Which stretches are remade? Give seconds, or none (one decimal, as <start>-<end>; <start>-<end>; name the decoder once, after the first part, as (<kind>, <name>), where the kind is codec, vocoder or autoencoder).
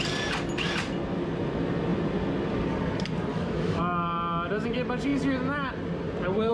3.3-3.8 (autoencoder, DAC-VAE)